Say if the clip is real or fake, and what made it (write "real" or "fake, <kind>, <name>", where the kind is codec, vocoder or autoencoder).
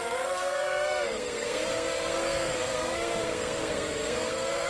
fake, codec, SNAC